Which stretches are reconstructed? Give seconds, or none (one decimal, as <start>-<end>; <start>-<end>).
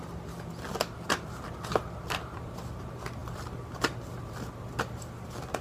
none